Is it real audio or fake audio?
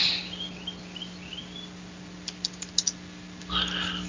real